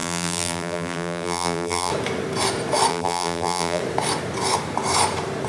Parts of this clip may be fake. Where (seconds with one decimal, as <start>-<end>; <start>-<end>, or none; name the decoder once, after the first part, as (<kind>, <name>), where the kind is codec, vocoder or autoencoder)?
0.0-1.9 (vocoder, BigVGAN v2); 2.9-3.8